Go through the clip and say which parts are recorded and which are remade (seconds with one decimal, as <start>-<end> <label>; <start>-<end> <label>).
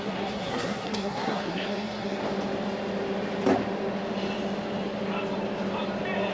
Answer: 0.0-2.2 remade; 2.2-6.3 recorded